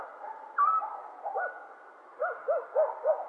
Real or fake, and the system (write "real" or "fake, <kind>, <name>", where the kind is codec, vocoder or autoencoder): real